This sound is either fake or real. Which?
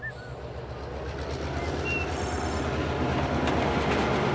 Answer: real